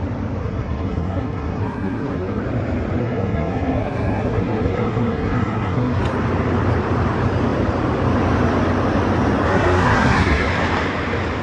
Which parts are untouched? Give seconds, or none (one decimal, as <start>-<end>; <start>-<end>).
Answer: 0.0-0.4; 2.4-3.0; 6.0-9.5; 10.5-11.4